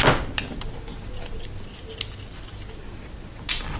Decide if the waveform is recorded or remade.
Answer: recorded